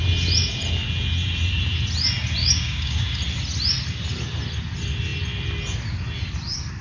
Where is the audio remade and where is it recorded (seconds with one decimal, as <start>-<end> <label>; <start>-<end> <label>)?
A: 0.0-2.4 recorded; 2.4-3.2 remade; 3.2-6.8 recorded